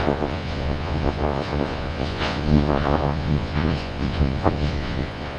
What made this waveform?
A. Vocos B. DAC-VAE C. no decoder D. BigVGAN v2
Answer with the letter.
A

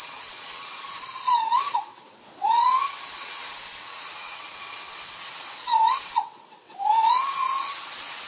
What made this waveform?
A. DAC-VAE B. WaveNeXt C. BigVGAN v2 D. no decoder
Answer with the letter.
B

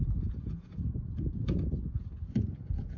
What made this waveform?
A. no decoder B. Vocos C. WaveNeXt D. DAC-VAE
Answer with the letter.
B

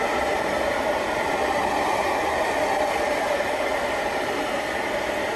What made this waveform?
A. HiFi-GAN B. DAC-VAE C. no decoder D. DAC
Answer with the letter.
C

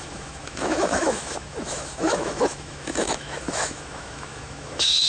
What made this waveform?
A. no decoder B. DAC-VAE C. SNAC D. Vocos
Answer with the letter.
B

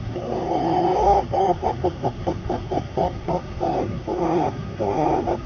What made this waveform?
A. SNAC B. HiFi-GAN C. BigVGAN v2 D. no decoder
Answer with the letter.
A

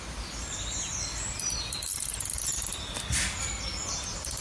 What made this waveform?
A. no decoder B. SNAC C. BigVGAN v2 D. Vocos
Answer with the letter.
A